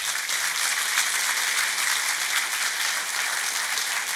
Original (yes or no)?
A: yes